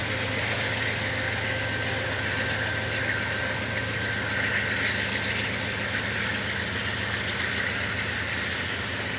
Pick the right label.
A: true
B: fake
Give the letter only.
A